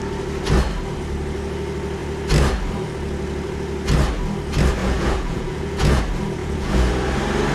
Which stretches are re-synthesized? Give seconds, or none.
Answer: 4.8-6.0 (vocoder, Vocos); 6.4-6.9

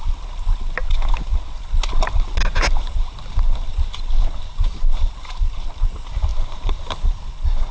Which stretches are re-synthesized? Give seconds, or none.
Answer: none

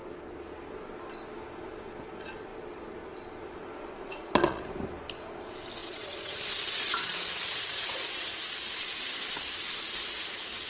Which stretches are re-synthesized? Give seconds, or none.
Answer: 4.0-4.6 (vocoder, Vocos); 5.8-8.4

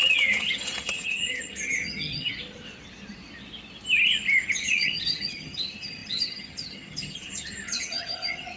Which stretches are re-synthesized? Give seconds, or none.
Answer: 0.0-2.3 (vocoder, HiFi-GAN); 4.6-8.6

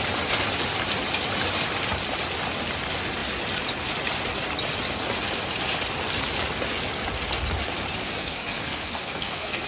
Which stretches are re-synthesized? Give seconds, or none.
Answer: 8.0-9.7 (codec, SNAC)

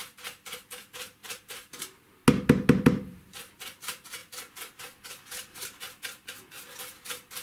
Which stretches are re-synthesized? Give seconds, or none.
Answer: 1.2-2.1 (vocoder, BigVGAN v2)

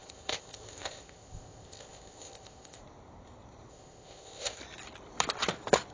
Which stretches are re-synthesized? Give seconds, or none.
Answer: 0.0-2.8 (codec, ZipCodec); 3.7-4.6

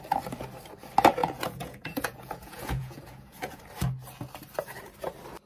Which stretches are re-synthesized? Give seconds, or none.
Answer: 1.2-3.6 (vocoder, Vocos)